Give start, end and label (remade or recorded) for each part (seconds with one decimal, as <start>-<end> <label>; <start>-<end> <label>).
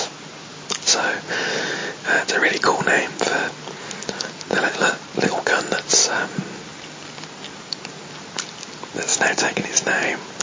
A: 0.0-10.4 recorded